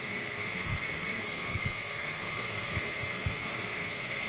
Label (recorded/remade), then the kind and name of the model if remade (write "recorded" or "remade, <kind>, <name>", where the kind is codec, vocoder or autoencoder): remade, codec, SNAC